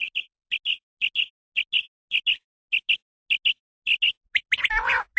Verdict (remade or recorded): recorded